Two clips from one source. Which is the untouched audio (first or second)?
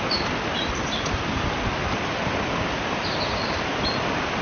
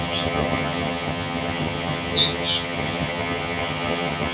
first